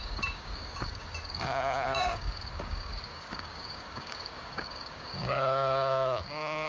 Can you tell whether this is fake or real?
fake